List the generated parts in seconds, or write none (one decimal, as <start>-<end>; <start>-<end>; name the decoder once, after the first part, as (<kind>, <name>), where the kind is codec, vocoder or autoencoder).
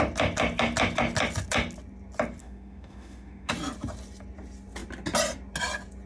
2.4-3.5 (autoencoder, DAC-VAE)